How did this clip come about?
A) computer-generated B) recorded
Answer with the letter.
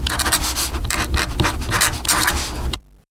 A